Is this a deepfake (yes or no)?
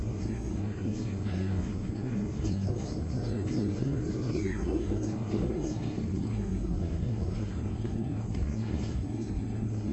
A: yes